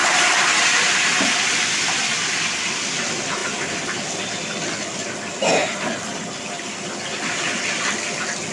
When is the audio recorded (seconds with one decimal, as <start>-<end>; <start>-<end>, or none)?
2.0-8.5